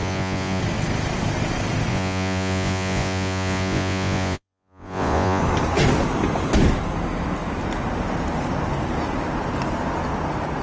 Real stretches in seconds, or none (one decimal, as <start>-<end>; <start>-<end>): 0.6-1.9; 5.4-10.6

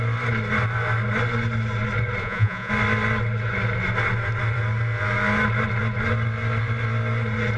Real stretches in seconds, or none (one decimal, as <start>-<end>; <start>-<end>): 0.0-2.2; 2.7-7.6

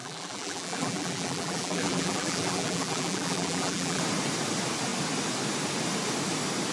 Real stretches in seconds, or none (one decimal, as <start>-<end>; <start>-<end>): 4.0-6.7

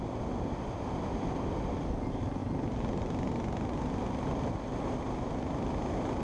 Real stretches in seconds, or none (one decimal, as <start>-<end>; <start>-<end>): 0.0-6.2